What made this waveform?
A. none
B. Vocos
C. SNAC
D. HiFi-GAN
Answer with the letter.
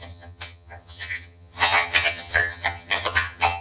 D